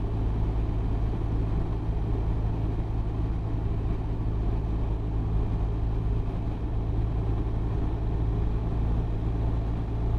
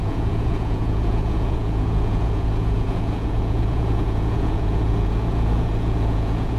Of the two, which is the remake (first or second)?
second